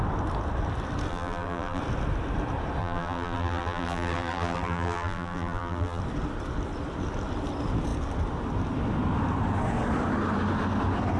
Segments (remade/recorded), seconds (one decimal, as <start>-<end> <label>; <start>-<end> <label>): 0.0-1.1 recorded; 1.1-1.8 remade; 1.8-2.8 recorded; 2.8-6.0 remade; 6.0-11.2 recorded